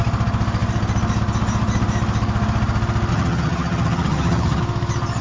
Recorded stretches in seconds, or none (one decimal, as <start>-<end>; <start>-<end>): 0.0-3.1; 4.6-5.2